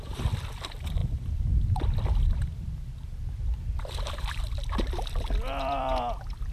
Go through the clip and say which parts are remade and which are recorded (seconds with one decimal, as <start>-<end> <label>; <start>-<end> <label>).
0.0-6.5 remade